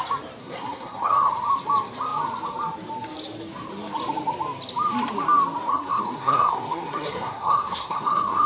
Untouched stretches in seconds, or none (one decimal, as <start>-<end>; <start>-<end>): 0.0-0.4; 1.3-5.7